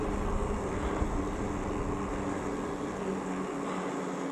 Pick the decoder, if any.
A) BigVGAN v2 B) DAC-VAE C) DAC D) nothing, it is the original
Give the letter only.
D